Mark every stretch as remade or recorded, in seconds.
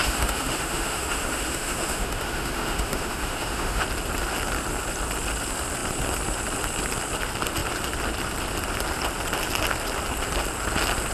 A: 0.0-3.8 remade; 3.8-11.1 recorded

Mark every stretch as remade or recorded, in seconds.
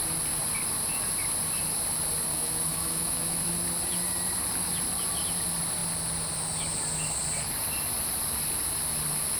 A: 0.0-2.3 recorded; 2.3-3.4 remade; 3.4-9.4 recorded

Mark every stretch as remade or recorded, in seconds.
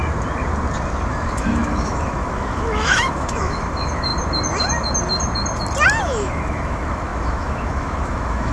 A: 0.0-1.1 recorded; 1.1-4.1 remade; 4.1-6.0 recorded; 6.0-8.5 remade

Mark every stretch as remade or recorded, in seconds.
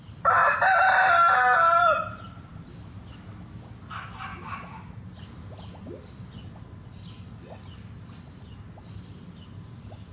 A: 0.0-4.3 recorded; 4.3-5.0 remade; 5.0-10.1 recorded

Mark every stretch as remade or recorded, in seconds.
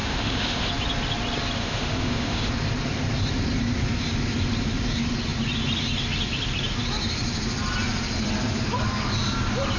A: 0.0-0.7 remade; 0.7-1.6 recorded; 1.6-2.5 remade; 2.5-9.8 recorded